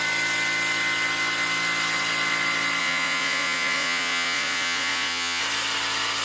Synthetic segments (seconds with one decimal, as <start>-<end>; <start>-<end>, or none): 2.8-5.4